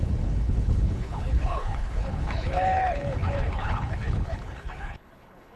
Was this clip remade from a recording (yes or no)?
yes